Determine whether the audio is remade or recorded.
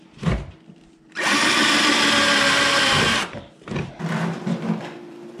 remade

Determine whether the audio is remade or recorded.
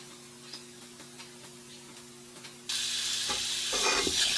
recorded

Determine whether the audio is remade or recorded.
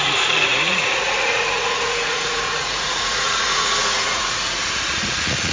remade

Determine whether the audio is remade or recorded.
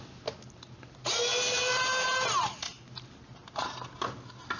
recorded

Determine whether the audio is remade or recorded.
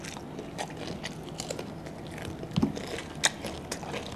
recorded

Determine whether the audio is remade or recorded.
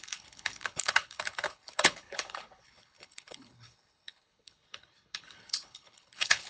remade